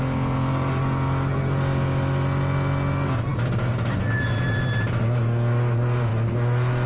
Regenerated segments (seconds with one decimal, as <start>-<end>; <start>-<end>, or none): none